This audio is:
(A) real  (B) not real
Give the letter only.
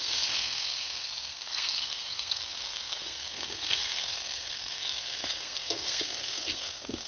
B